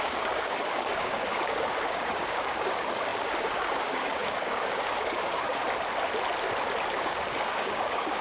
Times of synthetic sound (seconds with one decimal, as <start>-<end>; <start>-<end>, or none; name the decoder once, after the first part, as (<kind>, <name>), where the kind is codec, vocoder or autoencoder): 0.0-5.6 (codec, DAC); 7.0-8.2